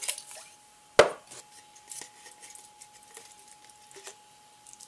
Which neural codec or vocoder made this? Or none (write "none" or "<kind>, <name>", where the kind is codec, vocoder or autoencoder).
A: none